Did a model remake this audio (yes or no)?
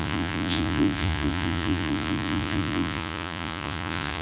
yes